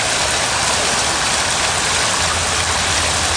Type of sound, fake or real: real